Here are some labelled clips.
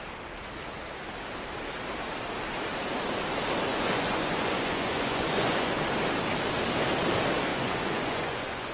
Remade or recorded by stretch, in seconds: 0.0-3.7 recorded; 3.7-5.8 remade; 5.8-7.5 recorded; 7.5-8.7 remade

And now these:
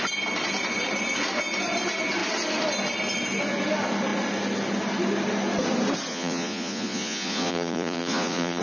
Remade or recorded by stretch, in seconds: 0.0-6.1 recorded; 6.1-8.6 remade

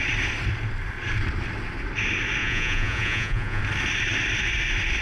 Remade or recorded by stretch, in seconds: 0.0-2.4 recorded; 2.4-3.6 remade; 3.6-5.0 recorded

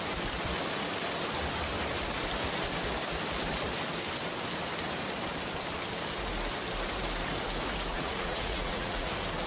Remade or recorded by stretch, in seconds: 0.0-7.9 recorded; 7.9-9.1 remade; 9.1-9.5 recorded

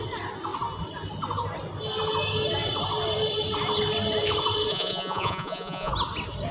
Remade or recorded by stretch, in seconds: 0.0-4.7 recorded; 4.7-5.9 remade; 5.9-6.5 recorded

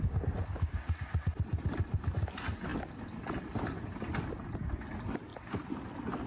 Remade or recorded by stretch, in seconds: 0.0-6.3 recorded

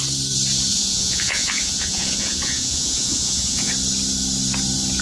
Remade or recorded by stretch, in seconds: 0.0-0.7 recorded; 0.7-3.7 remade; 3.7-5.0 recorded

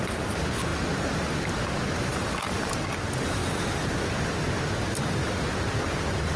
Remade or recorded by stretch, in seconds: 0.0-6.4 recorded